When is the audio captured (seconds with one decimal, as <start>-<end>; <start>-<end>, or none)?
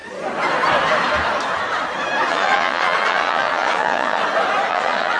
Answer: 0.0-2.3; 4.2-4.7